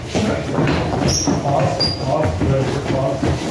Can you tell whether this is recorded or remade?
recorded